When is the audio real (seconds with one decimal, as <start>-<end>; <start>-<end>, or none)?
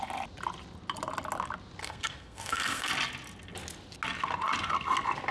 0.0-1.8; 2.9-5.3